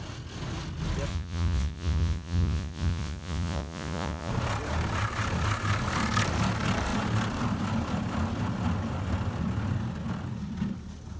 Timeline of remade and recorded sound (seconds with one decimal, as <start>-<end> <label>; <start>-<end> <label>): 0.0-1.1 recorded; 1.1-4.3 remade; 4.3-11.2 recorded